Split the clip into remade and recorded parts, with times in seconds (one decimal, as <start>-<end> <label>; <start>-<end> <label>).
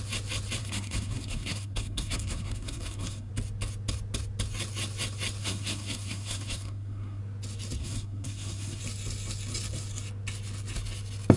0.0-0.6 recorded; 0.6-3.3 remade; 3.3-5.4 recorded; 5.4-7.2 remade; 7.2-7.8 recorded; 7.8-8.8 remade; 8.8-11.4 recorded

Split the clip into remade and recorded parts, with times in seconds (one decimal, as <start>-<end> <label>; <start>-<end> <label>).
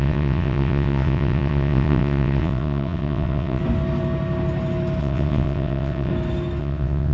0.0-3.6 remade; 3.6-5.0 recorded; 5.0-6.1 remade; 6.1-6.6 recorded; 6.6-7.1 remade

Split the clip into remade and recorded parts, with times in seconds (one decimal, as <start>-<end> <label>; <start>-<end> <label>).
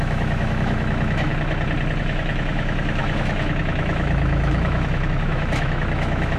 0.0-1.3 remade; 1.3-2.0 recorded; 2.0-6.4 remade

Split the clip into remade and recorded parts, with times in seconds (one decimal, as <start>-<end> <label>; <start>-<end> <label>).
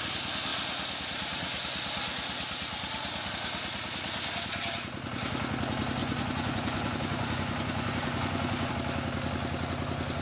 0.0-6.0 recorded; 6.0-8.7 remade; 8.7-10.2 recorded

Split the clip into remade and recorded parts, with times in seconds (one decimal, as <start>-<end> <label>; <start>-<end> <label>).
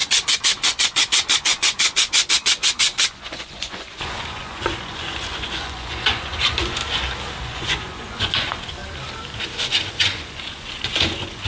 0.0-6.8 remade; 6.8-7.4 recorded; 7.4-8.8 remade; 8.8-9.9 recorded; 9.9-11.5 remade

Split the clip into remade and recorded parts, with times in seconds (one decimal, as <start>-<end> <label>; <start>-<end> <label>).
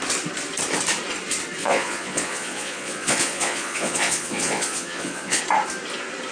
0.0-1.6 recorded; 1.6-5.4 remade; 5.4-6.3 recorded